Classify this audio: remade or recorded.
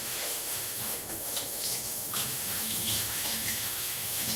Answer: remade